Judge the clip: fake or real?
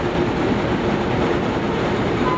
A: real